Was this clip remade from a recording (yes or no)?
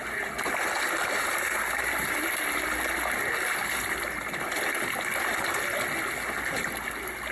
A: no